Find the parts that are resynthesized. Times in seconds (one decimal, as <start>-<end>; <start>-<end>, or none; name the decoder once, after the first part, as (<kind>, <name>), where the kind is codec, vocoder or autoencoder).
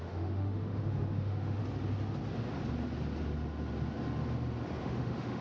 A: 0.0-1.6 (autoencoder, DAC-VAE); 4.8-5.4